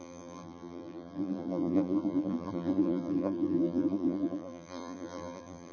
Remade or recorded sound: remade